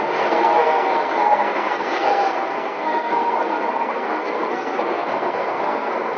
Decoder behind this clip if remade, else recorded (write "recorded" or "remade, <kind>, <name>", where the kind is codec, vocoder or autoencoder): remade, codec, SNAC